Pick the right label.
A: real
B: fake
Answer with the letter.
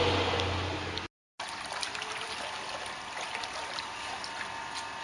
A